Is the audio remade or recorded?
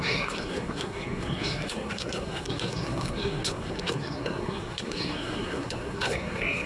remade